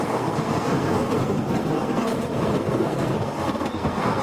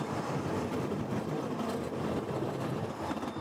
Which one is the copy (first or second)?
first